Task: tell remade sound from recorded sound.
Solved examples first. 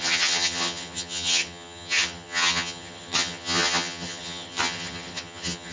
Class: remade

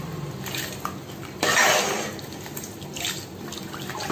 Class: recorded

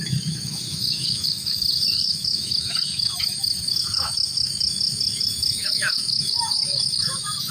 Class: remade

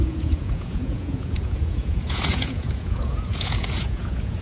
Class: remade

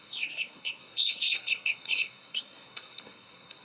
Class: remade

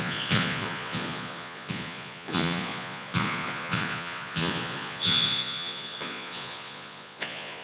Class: remade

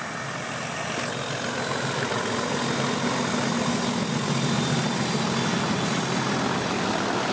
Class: recorded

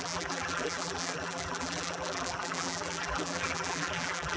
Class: remade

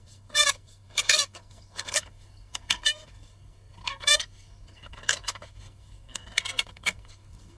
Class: remade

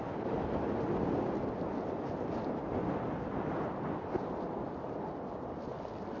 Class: recorded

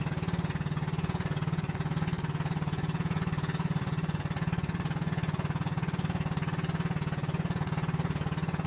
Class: remade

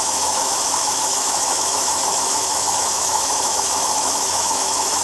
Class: remade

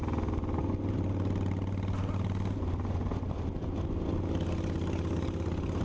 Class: recorded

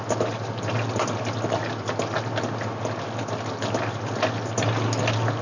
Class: recorded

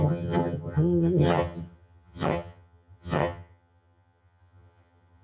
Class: remade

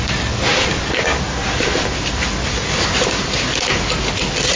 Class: recorded